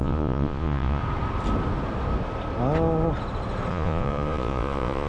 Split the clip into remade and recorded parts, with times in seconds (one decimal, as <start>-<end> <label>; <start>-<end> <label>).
0.0-1.0 remade; 1.0-3.7 recorded; 3.7-5.1 remade